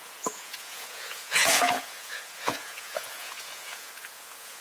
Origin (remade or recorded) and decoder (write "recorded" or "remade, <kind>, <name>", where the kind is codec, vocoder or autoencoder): remade, vocoder, Vocos